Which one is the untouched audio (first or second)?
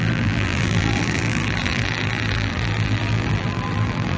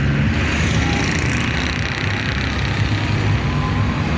second